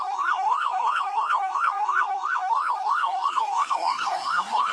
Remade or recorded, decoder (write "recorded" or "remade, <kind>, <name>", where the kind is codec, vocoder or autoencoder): remade, codec, SNAC